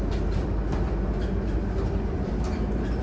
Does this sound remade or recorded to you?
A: recorded